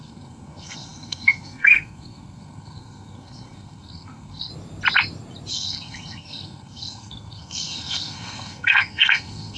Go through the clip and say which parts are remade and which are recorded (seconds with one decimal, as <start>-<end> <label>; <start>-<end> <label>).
0.0-4.5 remade; 4.5-5.5 recorded; 5.5-9.6 remade